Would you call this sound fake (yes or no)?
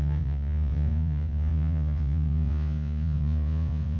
yes